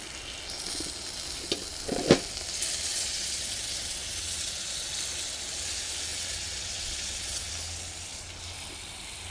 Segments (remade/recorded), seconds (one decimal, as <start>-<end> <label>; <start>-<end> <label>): 0.0-2.9 recorded; 2.9-4.9 remade; 4.9-6.1 recorded; 6.1-7.5 remade; 7.5-9.3 recorded